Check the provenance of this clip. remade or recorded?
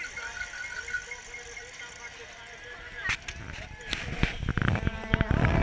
recorded